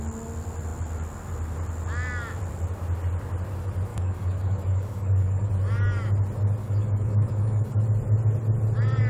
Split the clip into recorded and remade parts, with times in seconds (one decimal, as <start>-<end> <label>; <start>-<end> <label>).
0.0-3.9 recorded; 3.9-5.5 remade; 5.5-6.6 recorded; 6.6-7.8 remade; 7.8-9.1 recorded